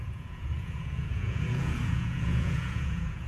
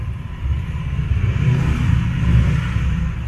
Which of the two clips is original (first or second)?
second